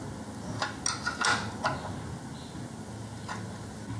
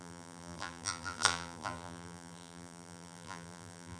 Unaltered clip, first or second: first